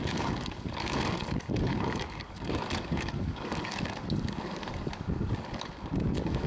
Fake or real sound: fake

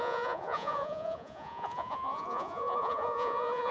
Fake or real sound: fake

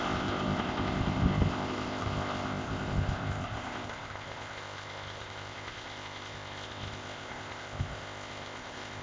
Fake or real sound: fake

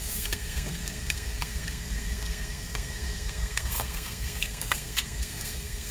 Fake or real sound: fake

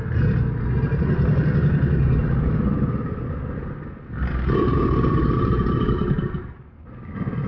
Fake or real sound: real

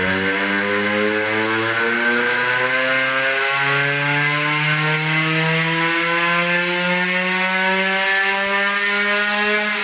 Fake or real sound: real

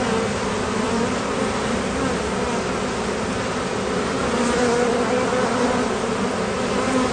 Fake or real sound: real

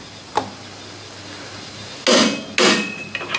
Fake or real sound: real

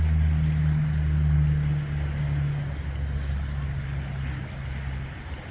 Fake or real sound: real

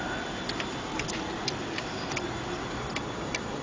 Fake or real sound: real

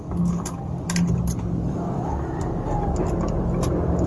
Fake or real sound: real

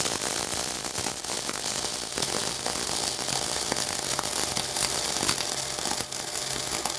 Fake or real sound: real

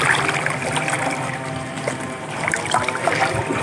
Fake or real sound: real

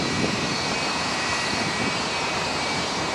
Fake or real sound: fake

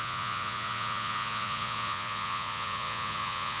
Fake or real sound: fake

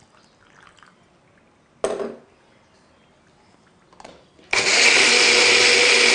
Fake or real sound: real